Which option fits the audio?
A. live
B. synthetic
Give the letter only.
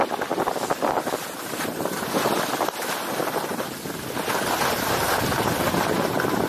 A